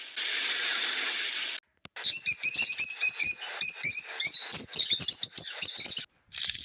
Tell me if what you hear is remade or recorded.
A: recorded